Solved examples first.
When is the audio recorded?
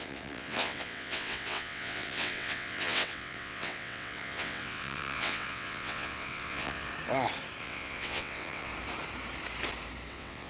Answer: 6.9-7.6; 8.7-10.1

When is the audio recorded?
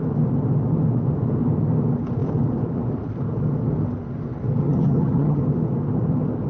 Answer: 0.0-4.6; 5.4-6.5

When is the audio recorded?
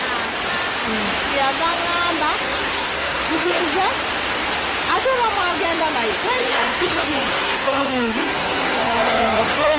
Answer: 0.0-2.4; 3.6-6.4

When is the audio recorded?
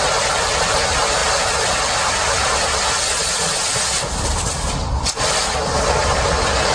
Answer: none